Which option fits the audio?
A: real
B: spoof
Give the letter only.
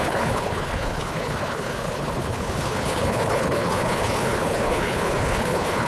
B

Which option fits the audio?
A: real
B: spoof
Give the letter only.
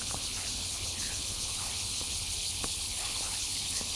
B